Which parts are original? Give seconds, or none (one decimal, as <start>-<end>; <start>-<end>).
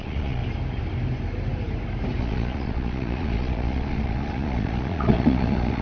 0.4-2.2